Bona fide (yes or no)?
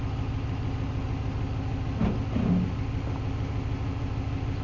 yes